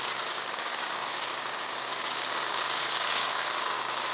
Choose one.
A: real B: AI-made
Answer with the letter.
B